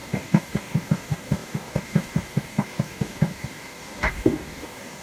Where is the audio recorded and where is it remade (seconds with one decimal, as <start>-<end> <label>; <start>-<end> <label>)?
0.0-5.0 remade